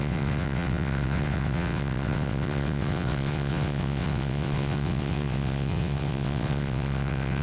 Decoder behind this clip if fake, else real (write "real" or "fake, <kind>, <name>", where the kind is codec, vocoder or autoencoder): fake, vocoder, WaveNeXt